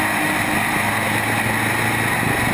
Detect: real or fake real